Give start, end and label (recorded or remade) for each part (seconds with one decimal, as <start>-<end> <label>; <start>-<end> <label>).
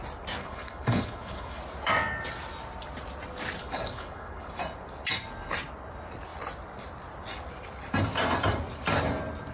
0.0-0.4 recorded; 0.4-1.6 remade; 1.6-3.6 recorded; 3.6-4.5 remade; 4.5-9.5 recorded